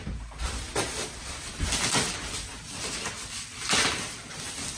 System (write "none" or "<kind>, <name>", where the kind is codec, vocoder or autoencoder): none